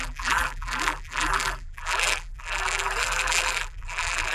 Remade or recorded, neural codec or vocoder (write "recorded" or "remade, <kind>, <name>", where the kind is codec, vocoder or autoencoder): remade, vocoder, BigVGAN v2